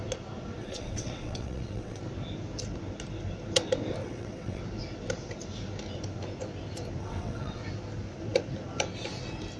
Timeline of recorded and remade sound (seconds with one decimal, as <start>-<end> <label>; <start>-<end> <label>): 0.0-0.6 recorded; 0.6-2.0 remade; 2.0-4.0 recorded; 4.0-4.6 remade; 4.6-7.0 recorded; 7.0-7.6 remade; 7.6-9.6 recorded